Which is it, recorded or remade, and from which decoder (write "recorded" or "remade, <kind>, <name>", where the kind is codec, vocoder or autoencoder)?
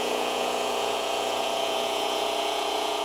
remade, vocoder, Vocos